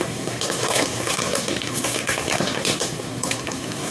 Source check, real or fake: fake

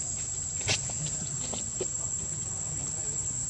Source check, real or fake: real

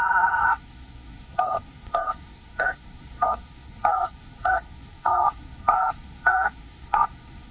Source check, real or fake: fake